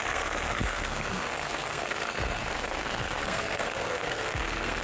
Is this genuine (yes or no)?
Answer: no